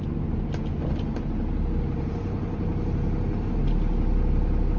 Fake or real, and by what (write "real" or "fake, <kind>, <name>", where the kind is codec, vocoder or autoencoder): real